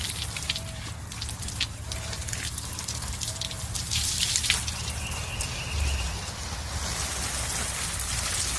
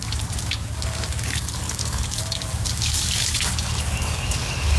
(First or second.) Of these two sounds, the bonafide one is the first